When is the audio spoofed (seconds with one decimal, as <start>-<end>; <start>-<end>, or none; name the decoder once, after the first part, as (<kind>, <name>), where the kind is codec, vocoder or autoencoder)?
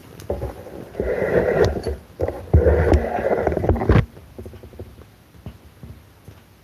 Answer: 0.0-4.0 (vocoder, BigVGAN v2)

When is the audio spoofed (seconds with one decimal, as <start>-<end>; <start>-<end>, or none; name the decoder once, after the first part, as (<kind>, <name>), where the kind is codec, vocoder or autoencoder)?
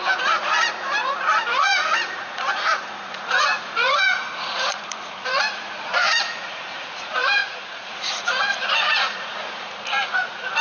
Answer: 0.0-10.6 (vocoder, Vocos)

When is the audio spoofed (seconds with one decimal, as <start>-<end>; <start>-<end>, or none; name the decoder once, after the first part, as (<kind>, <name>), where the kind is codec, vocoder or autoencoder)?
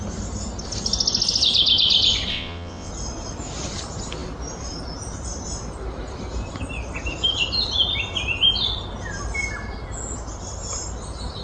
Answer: 2.3-2.9 (vocoder, WaveNeXt)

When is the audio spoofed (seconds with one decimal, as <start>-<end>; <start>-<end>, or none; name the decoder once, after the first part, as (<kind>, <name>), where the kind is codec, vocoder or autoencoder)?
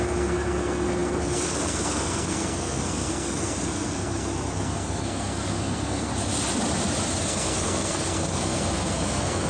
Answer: 0.0-6.1 (codec, SNAC); 7.2-9.5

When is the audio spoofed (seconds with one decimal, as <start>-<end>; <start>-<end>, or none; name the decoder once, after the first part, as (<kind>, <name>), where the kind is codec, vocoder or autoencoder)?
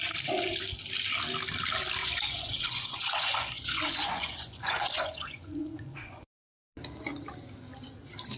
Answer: 2.0-6.3 (vocoder, Vocos)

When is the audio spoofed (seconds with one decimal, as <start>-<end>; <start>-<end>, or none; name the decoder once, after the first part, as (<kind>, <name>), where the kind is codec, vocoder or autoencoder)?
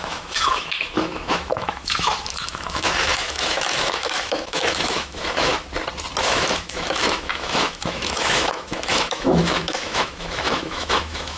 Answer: 0.0-5.5 (autoencoder, DAC-VAE); 6.2-11.4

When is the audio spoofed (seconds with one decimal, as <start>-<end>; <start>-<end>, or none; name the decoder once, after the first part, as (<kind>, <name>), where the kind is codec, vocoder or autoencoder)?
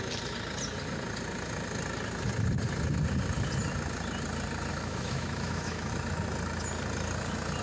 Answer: 4.7-5.9 (autoencoder, DAC-VAE)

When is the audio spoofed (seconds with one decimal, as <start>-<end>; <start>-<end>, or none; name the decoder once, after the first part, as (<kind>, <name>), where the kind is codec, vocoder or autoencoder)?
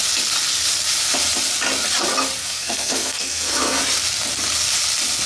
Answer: 2.4-3.8 (codec, SNAC)